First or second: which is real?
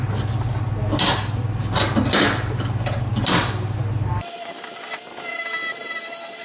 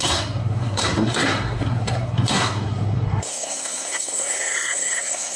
first